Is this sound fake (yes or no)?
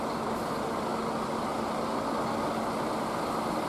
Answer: no